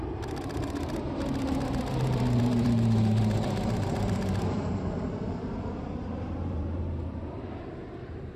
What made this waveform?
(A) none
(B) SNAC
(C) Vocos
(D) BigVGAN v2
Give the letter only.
D